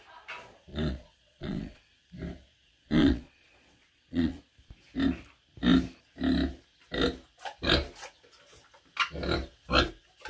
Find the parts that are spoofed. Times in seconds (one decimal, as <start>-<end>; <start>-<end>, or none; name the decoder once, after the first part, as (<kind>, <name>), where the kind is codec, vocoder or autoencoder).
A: 0.7-1.8 (vocoder, Vocos); 2.6-4.5